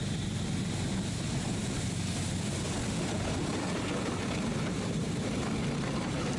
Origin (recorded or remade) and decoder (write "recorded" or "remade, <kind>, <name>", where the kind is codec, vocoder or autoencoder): recorded